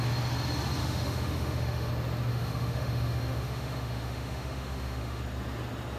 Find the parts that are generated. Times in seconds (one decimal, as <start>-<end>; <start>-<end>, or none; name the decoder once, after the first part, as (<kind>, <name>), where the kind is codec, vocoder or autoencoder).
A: 0.8-1.9 (autoencoder, DAC-VAE); 2.3-5.2